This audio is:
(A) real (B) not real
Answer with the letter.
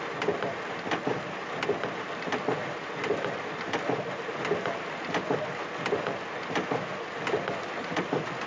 A